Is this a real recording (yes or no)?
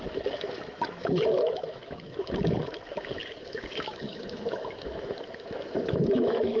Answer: no